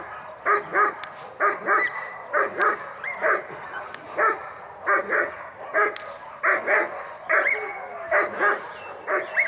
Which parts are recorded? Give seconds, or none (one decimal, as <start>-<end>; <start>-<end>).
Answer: 0.0-6.8; 7.5-9.5